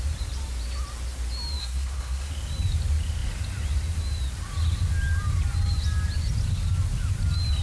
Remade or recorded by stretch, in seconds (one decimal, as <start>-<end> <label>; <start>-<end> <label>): 0.0-1.6 recorded; 1.6-2.3 remade; 2.3-7.6 recorded